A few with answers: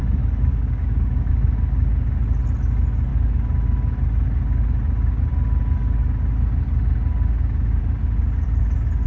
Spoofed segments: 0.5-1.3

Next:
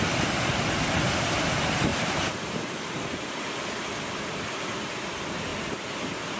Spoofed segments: 1.9-3.5

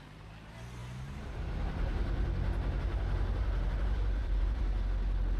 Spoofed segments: 0.8-2.0; 3.4-4.6

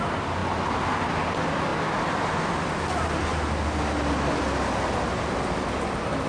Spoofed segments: none

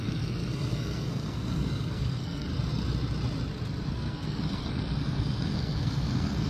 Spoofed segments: 0.0-2.5; 3.9-6.5

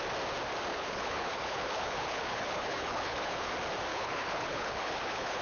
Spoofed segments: 0.7-3.5; 3.9-5.4